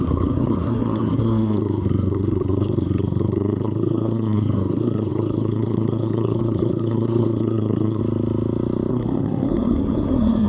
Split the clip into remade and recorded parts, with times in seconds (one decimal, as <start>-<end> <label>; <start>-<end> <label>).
0.0-8.0 remade; 8.0-8.9 recorded; 8.9-10.5 remade